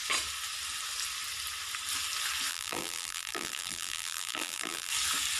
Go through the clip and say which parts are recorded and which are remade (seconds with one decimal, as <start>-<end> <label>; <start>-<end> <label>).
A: 0.0-2.5 recorded; 2.5-4.9 remade; 4.9-5.4 recorded